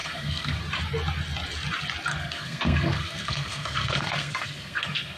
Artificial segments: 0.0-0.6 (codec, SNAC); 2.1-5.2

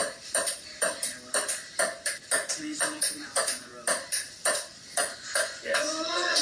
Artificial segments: 2.6-3.7 (vocoder, Vocos); 5.0-6.4